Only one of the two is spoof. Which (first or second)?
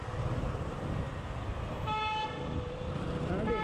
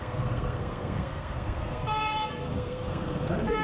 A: second